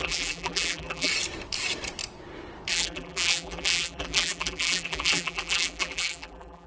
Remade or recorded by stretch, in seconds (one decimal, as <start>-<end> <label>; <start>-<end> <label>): 0.0-1.1 remade; 1.1-2.7 recorded; 2.7-6.7 remade